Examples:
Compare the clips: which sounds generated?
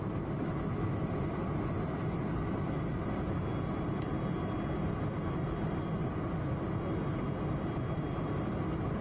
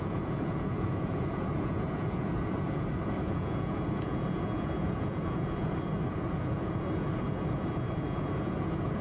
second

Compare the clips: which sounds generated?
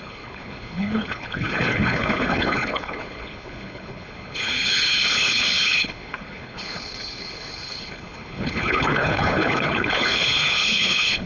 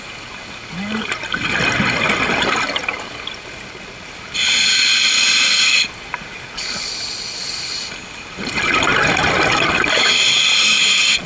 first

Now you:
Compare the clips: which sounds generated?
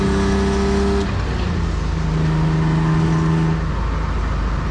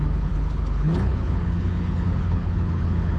second